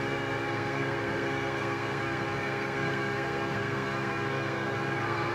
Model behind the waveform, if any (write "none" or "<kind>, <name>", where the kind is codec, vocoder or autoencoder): codec, SNAC